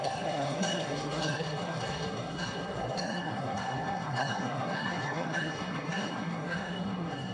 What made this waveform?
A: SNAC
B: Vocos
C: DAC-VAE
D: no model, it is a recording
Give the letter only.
A